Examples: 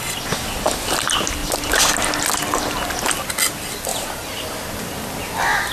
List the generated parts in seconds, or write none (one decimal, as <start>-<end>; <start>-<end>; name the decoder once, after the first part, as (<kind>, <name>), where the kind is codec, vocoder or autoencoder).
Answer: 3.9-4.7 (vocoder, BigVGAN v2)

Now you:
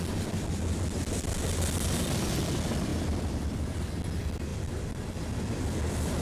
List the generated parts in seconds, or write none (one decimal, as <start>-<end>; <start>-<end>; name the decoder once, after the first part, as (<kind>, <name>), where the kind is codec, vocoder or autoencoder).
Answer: 2.9-3.8 (vocoder, BigVGAN v2); 4.5-5.4

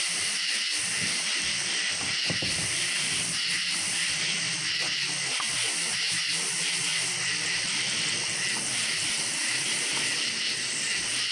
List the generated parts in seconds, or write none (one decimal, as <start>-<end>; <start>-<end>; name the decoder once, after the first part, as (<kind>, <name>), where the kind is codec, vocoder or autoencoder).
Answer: none

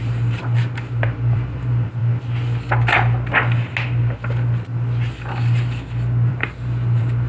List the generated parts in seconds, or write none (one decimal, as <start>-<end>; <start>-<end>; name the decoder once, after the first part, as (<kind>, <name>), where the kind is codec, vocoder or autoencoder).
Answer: 0.0-2.0 (vocoder, BigVGAN v2); 6.3-7.3